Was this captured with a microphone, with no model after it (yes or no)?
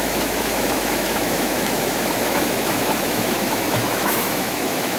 no